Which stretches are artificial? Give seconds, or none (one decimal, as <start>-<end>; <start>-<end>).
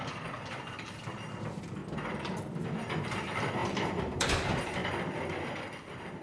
0.0-1.8; 3.0-4.8; 5.8-6.2